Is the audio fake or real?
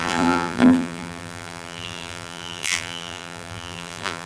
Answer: fake